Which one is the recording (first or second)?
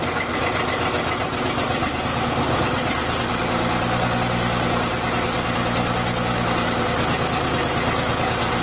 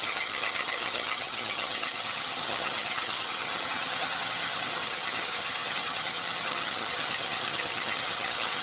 first